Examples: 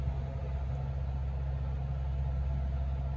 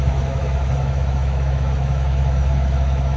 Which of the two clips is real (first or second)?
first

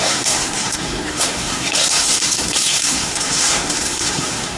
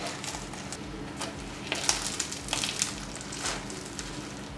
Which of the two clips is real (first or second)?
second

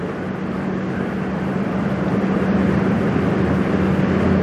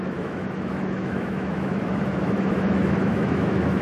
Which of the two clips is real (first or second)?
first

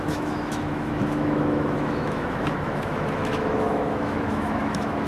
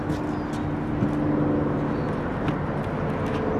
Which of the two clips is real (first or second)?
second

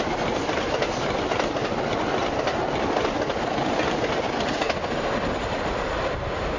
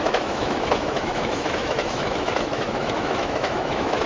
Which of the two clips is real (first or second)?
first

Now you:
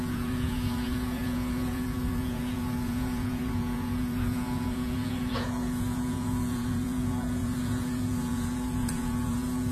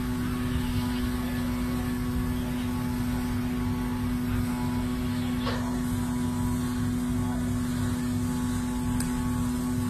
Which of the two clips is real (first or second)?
second